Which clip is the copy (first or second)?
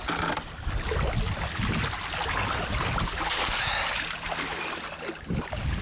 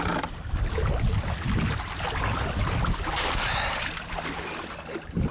second